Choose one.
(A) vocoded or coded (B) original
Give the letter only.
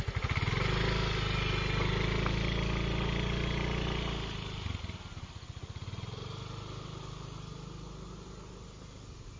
B